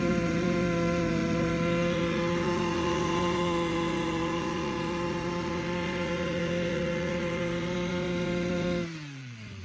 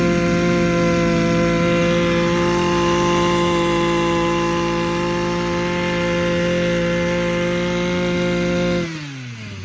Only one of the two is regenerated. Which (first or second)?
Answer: first